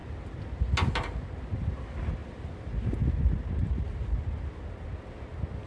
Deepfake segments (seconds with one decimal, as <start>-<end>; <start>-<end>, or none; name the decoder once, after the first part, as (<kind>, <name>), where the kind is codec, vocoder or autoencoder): none